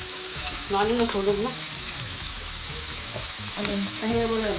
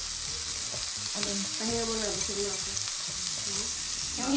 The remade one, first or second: first